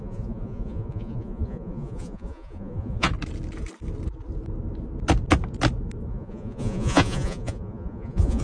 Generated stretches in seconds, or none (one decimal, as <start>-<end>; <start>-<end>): 0.0-3.1; 6.1-8.4